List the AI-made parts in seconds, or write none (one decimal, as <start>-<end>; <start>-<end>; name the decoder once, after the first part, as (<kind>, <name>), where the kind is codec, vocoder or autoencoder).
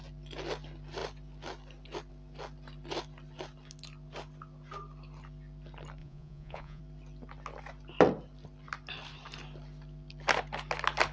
6.0-6.8 (vocoder, Vocos)